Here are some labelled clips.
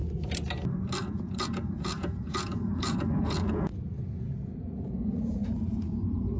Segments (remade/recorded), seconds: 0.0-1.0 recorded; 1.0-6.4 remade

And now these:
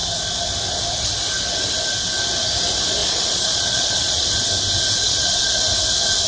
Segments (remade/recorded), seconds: 0.0-3.0 recorded; 3.0-4.3 remade; 4.3-5.0 recorded; 5.0-5.6 remade; 5.6-6.3 recorded